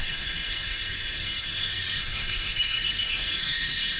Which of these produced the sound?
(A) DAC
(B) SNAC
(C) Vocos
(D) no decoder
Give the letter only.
B